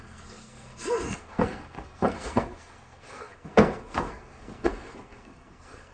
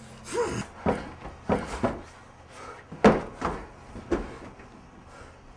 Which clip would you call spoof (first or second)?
first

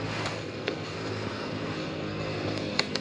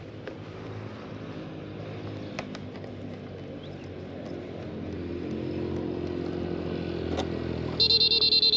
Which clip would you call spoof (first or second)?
first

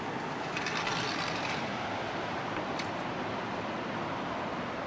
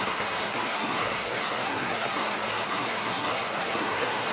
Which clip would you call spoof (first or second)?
second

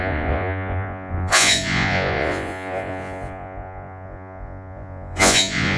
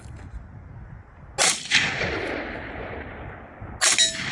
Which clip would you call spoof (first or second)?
first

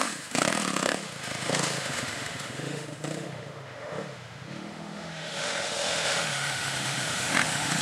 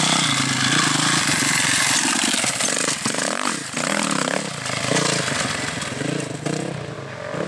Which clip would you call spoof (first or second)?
first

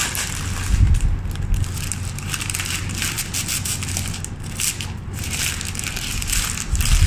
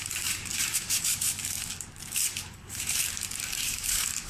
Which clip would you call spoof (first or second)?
second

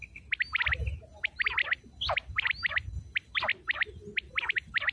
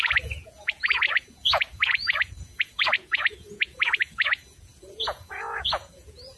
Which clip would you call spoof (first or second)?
second